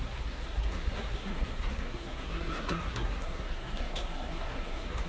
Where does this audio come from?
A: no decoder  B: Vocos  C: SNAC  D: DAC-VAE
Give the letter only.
C